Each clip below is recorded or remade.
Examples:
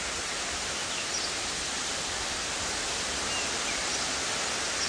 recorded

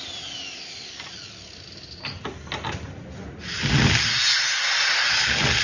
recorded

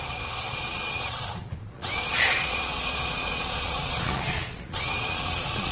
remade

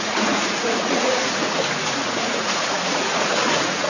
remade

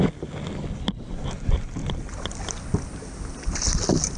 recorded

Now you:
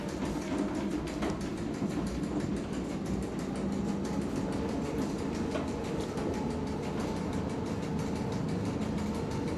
recorded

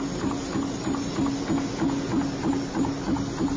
recorded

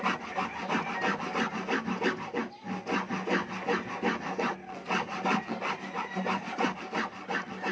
recorded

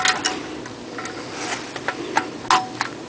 recorded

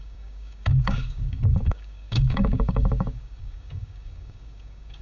remade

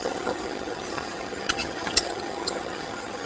remade